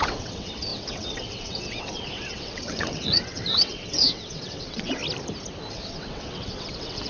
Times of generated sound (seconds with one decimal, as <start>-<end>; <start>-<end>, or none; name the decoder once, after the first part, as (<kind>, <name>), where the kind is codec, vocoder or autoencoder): 0.0-5.0 (vocoder, WaveNeXt); 5.7-7.1